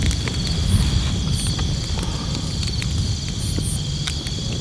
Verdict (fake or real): real